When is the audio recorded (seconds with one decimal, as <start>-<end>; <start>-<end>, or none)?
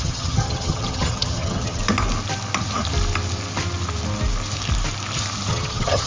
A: 1.8-5.5